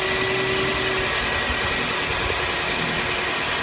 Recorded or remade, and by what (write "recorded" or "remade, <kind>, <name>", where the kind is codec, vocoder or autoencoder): recorded